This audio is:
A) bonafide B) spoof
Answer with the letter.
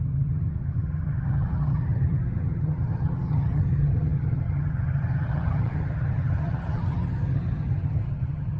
B